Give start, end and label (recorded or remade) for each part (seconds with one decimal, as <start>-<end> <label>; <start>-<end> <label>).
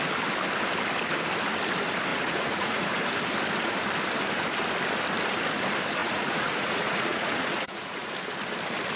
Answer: 0.0-2.1 recorded; 2.1-2.9 remade; 2.9-6.0 recorded; 6.0-8.1 remade; 8.1-9.0 recorded